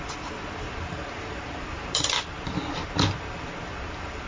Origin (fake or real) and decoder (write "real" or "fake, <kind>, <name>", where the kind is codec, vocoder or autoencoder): fake, vocoder, BigVGAN v2